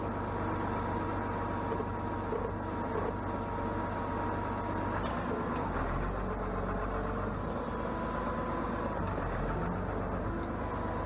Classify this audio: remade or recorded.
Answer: recorded